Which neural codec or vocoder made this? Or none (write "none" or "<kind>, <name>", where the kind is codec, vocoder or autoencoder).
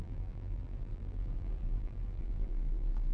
vocoder, BigVGAN v2